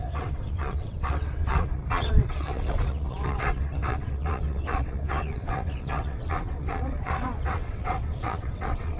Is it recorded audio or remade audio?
remade